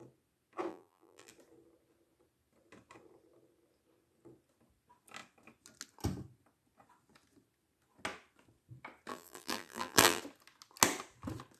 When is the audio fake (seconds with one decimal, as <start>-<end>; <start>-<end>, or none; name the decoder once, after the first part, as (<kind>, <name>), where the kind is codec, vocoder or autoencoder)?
0.7-1.3 (vocoder, BigVGAN v2); 9.1-10.2